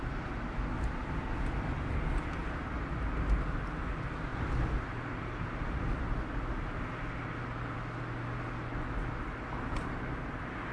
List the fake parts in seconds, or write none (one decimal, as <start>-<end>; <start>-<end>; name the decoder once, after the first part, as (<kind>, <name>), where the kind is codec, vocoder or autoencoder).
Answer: none